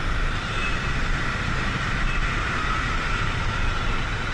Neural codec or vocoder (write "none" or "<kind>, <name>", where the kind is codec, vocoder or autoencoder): vocoder, BigVGAN v2